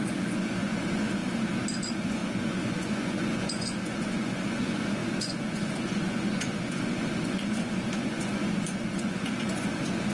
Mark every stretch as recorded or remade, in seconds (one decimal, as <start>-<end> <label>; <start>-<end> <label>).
0.0-1.2 remade; 1.2-1.8 recorded; 1.8-10.1 remade